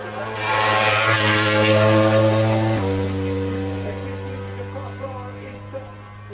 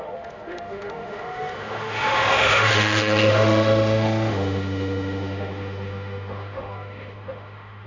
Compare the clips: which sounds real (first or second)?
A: first